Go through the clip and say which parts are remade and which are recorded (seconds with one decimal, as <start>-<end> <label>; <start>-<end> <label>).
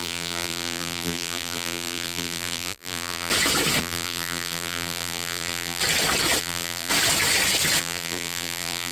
0.0-3.3 remade; 3.3-3.8 recorded; 3.8-5.8 remade; 5.8-6.4 recorded; 6.4-6.9 remade; 6.9-7.8 recorded; 7.8-8.9 remade